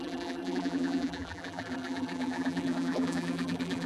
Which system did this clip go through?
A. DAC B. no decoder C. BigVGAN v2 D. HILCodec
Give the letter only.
C